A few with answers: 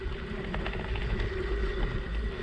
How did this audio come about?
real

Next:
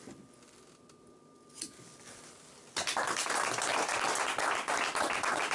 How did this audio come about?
real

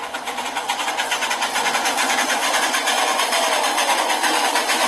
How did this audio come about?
fake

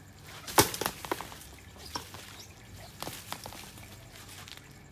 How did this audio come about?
real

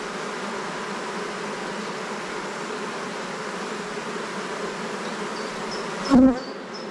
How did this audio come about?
real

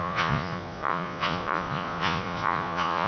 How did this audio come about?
fake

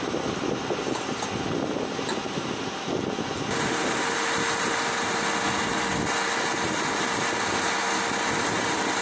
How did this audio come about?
real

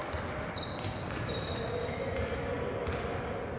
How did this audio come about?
real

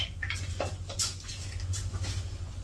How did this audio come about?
fake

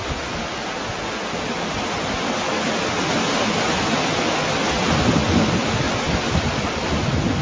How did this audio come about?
real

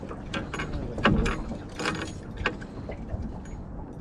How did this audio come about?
real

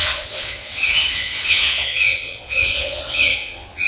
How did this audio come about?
fake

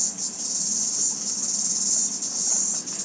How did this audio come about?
real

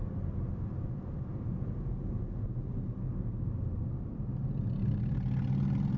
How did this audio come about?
real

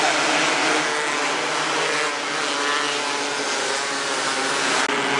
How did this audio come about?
real